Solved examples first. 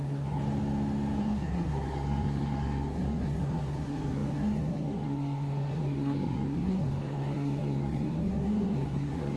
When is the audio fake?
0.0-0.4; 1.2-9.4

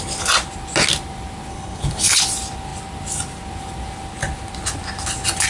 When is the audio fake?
1.5-2.2

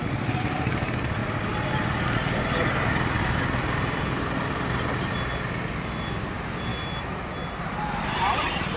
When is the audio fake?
none